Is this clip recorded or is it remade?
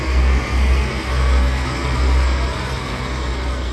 remade